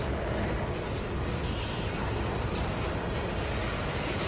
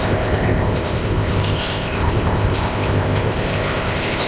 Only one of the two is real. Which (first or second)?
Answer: first